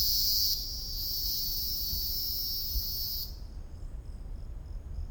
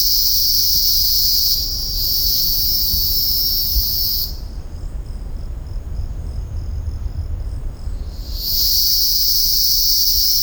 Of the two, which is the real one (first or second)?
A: first